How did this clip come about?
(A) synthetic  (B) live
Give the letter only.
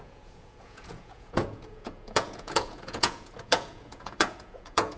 A